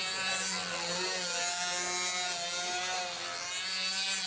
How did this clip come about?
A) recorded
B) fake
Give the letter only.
A